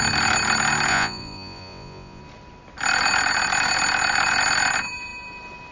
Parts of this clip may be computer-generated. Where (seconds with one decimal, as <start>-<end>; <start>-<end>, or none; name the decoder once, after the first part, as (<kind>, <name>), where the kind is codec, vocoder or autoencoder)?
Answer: 0.9-2.2 (vocoder, Vocos)